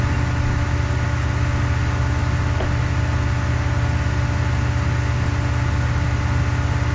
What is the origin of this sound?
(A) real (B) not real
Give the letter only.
A